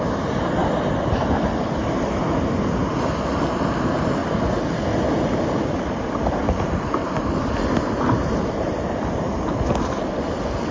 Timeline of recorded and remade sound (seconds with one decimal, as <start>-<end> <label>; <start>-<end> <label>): 0.0-10.7 recorded